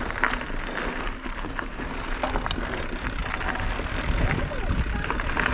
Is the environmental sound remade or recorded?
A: recorded